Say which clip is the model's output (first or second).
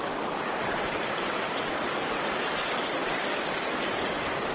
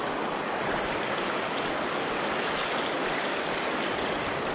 first